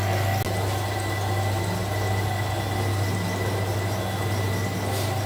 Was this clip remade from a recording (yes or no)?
no